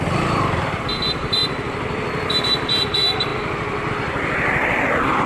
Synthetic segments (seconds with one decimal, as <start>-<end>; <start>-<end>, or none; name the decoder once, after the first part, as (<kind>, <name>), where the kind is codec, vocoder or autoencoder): 0.0-3.3 (vocoder, BigVGAN v2); 3.9-5.3